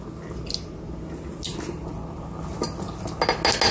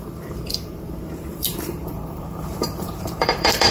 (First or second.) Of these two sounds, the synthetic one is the second